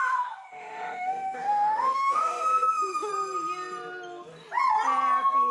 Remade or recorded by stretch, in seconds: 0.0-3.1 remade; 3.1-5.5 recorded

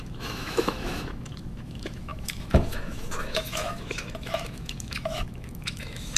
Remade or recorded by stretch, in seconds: 0.0-6.2 remade

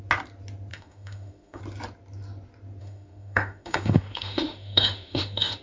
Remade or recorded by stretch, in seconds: 0.0-0.7 recorded; 0.7-1.6 remade; 1.6-2.8 recorded; 2.8-5.6 remade

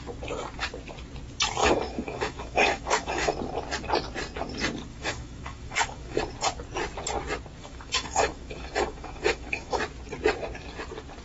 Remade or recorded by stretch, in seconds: 0.0-1.6 recorded; 1.6-3.3 remade; 3.3-4.9 recorded; 4.9-6.2 remade; 6.2-7.6 recorded; 7.6-9.8 remade; 9.8-11.2 recorded

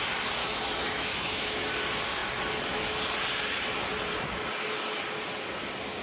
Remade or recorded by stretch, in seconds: 0.0-0.4 recorded; 0.4-1.7 remade; 1.7-6.0 recorded